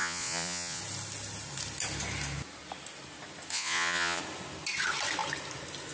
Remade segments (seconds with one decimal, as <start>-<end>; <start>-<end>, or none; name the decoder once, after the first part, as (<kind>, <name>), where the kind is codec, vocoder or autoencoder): 0.0-0.8 (vocoder, Vocos); 3.5-4.2